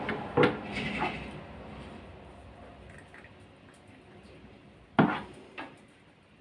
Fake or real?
real